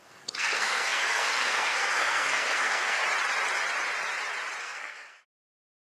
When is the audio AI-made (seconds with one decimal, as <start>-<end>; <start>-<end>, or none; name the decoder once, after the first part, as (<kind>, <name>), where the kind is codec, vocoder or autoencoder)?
0.0-3.0 (codec, SNAC); 4.6-5.9